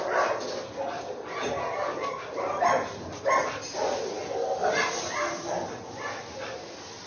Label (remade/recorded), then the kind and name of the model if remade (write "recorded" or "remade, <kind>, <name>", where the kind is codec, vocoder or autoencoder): recorded